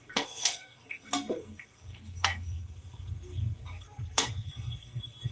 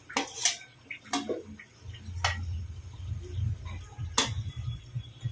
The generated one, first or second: first